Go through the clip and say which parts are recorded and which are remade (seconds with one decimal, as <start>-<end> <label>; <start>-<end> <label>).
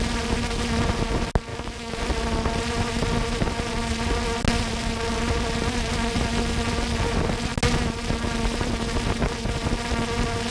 0.0-1.5 recorded; 1.5-2.0 remade; 2.0-10.5 recorded